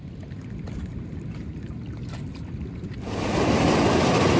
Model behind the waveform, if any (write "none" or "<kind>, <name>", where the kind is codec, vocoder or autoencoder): none